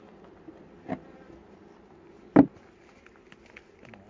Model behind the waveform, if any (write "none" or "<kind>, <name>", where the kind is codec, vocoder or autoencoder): none